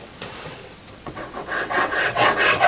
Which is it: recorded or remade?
remade